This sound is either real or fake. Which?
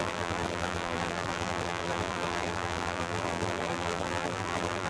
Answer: fake